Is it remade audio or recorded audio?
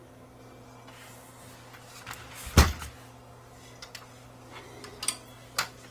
recorded